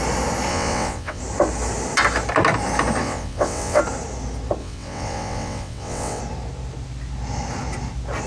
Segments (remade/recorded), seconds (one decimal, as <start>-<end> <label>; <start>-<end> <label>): 0.0-0.5 recorded; 0.5-1.2 remade; 1.2-3.0 recorded; 3.0-3.8 remade; 3.8-4.6 recorded; 4.6-6.2 remade; 6.2-8.3 recorded